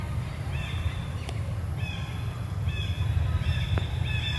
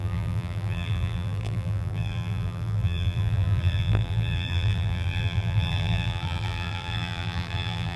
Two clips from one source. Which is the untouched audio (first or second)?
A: first